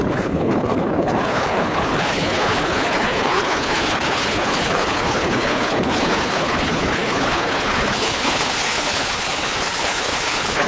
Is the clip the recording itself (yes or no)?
no